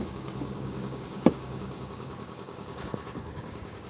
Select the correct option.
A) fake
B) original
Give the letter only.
A